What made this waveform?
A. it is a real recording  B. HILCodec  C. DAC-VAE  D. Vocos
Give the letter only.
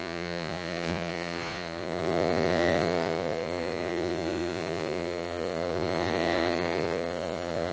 D